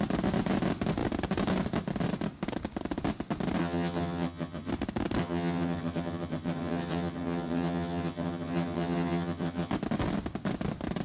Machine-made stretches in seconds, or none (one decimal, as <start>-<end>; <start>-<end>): 3.6-4.7; 5.2-9.7